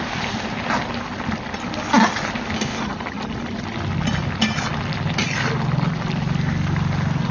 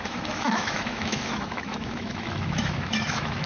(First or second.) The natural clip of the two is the first